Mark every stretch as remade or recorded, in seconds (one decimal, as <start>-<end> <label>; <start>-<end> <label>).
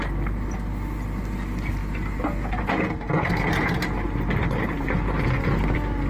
0.0-6.1 recorded